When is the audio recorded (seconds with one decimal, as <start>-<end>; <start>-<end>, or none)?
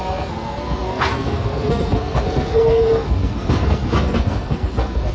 none